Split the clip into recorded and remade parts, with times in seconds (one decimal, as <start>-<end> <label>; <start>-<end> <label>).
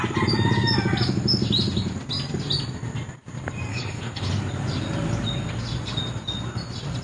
0.0-3.7 recorded; 3.7-4.3 remade; 4.3-7.0 recorded